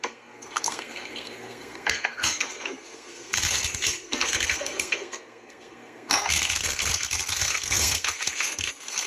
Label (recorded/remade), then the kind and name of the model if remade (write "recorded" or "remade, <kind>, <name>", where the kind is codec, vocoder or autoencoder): remade, codec, SNAC